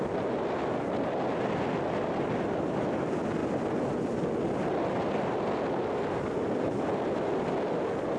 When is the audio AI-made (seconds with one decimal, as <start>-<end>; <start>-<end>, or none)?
none